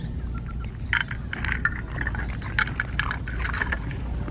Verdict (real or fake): real